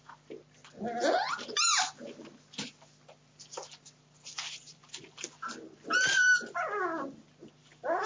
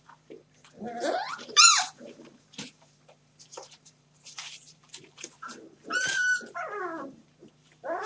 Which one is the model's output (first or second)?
second